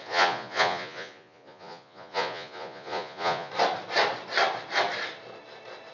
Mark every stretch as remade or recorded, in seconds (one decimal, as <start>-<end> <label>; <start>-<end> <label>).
0.0-3.5 remade; 3.5-5.9 recorded